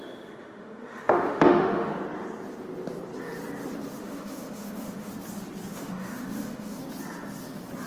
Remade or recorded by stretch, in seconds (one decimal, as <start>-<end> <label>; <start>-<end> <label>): 0.0-1.9 remade; 1.9-4.0 recorded; 4.0-5.1 remade; 5.1-5.7 recorded; 5.7-6.8 remade; 6.8-7.9 recorded